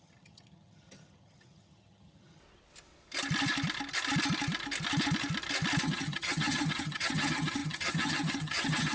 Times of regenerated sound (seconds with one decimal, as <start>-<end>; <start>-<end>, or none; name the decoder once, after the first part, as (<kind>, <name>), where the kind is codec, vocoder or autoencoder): 0.0-2.4 (vocoder, HiFi-GAN); 5.8-8.9